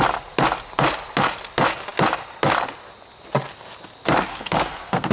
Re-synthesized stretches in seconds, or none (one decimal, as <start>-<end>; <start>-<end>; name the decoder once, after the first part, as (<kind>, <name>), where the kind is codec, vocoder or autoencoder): 4.3-5.1 (codec, SNAC)